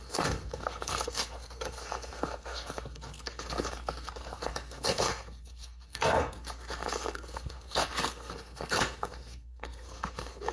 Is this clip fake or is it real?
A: fake